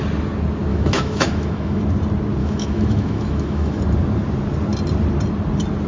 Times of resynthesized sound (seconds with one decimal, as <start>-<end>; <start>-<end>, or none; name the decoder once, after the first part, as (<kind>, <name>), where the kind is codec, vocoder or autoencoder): 0.7-1.8 (autoencoder, DAC-VAE); 2.4-3.8